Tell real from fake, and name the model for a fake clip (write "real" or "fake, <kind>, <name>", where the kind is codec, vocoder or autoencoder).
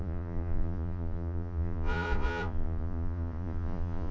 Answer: fake, vocoder, Vocos